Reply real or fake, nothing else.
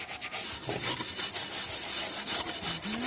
real